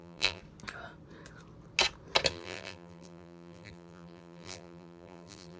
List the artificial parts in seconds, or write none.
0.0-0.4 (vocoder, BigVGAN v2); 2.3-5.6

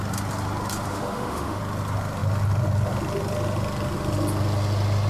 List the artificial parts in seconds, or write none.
0.9-1.6 (autoencoder, DAC-VAE)